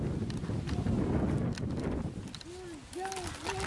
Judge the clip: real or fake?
real